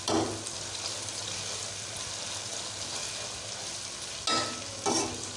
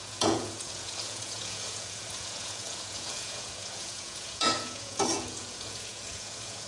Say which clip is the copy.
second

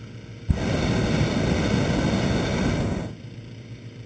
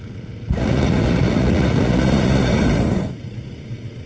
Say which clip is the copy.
second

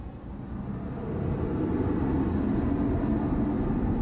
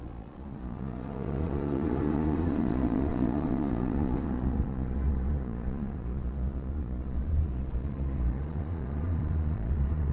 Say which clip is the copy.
second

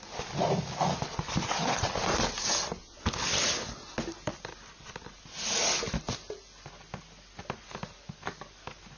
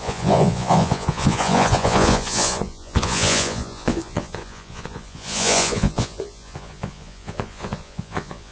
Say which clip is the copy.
second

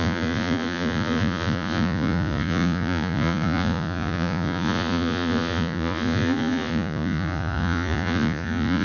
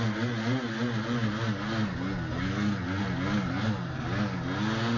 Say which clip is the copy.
first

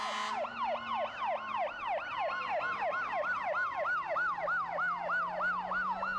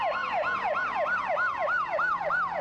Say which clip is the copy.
second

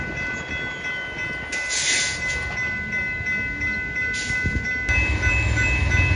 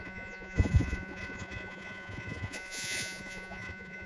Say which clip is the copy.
second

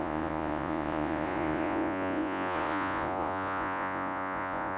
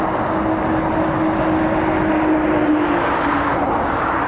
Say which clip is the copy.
first